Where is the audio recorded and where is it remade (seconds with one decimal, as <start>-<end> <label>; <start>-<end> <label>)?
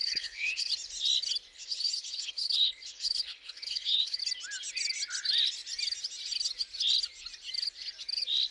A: 0.0-0.7 remade; 0.7-1.5 recorded; 1.5-4.2 remade; 4.2-8.5 recorded